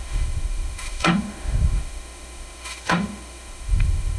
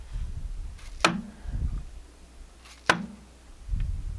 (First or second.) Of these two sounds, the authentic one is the second